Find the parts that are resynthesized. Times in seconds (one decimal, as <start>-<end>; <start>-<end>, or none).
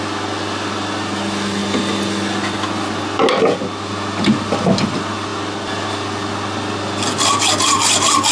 none